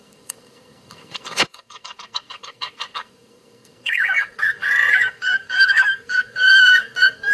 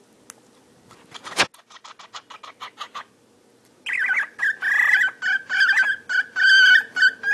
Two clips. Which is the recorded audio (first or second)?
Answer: second